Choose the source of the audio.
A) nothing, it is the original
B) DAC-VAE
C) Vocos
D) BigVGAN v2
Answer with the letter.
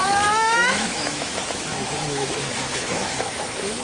B